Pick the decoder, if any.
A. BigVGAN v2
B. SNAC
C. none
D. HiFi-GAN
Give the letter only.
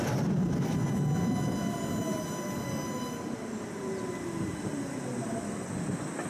C